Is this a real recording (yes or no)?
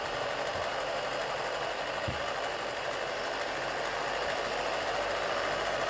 yes